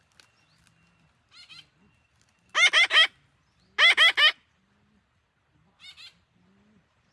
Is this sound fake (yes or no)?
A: no